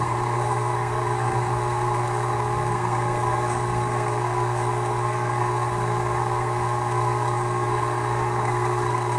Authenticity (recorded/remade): remade